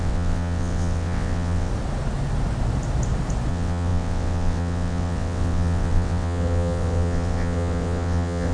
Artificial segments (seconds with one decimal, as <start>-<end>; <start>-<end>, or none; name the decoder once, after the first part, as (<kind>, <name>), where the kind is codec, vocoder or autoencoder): 0.0-1.7 (vocoder, WaveNeXt); 3.5-8.5